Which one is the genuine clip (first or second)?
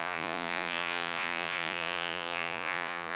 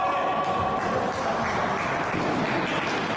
second